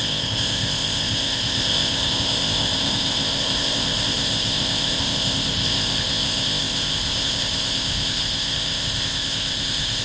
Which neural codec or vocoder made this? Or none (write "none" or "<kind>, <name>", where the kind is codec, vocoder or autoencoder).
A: codec, ZipCodec